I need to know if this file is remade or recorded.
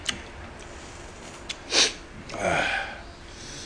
recorded